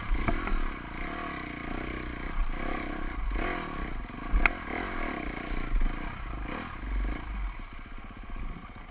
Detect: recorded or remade recorded